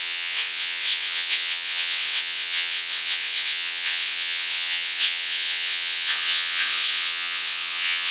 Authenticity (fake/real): fake